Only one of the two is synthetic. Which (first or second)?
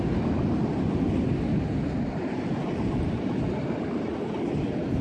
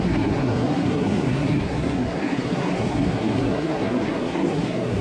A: second